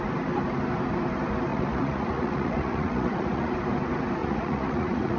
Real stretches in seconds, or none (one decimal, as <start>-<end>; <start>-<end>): 0.0-1.5; 3.5-4.2

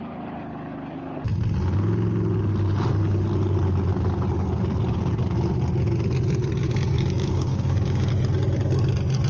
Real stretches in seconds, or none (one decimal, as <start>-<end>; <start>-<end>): 0.0-6.6; 8.1-9.3

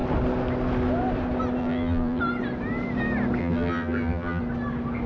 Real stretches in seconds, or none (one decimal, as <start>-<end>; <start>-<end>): 0.0-1.6; 2.2-3.4; 4.4-5.1

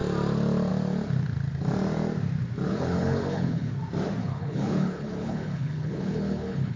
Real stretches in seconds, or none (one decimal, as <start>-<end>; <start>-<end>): 0.0-2.7; 3.7-4.2

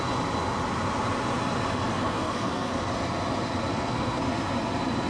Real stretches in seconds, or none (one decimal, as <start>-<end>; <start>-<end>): 0.0-1.9; 2.9-3.7; 4.2-5.1

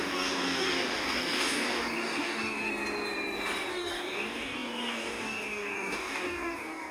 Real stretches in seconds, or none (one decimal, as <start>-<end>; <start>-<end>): 2.7-3.7